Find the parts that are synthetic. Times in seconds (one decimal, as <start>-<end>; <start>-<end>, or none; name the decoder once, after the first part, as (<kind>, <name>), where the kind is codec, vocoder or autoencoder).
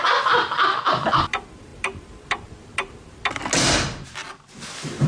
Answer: none